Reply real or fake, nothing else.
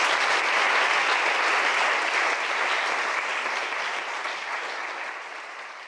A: real